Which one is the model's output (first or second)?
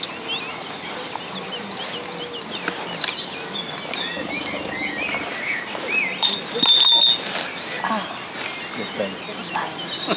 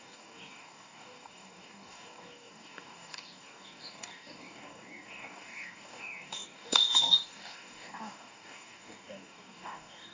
second